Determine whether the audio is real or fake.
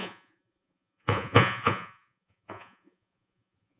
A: fake